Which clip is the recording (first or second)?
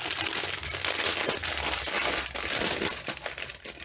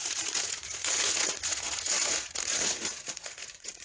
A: first